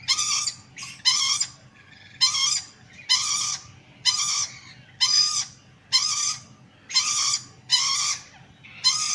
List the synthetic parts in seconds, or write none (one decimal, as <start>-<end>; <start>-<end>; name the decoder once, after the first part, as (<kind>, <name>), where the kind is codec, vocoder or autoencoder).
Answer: 3.2-4.1 (vocoder, BigVGAN v2); 7.7-8.6